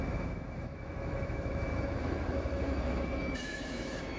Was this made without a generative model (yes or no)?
no